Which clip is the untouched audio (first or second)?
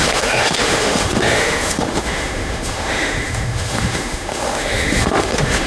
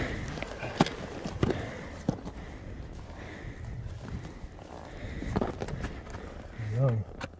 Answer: second